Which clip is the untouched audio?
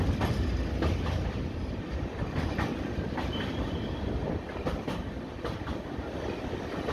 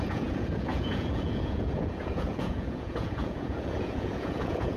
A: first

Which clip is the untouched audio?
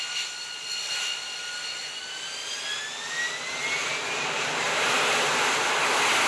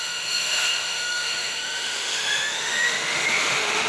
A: first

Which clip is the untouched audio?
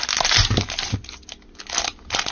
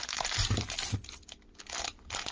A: first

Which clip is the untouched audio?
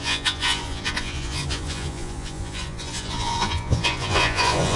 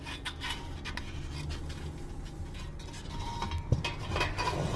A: second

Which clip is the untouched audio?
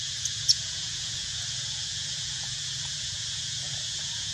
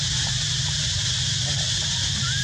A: second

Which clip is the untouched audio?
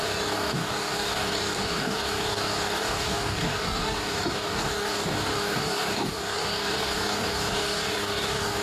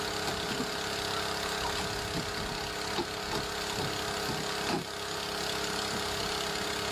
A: second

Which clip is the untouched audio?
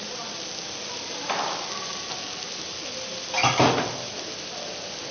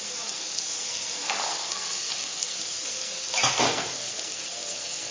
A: first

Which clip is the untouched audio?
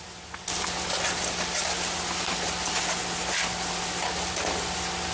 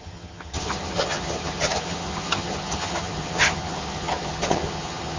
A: first